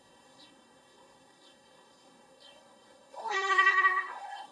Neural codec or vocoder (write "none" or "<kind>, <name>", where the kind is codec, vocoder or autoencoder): codec, SNAC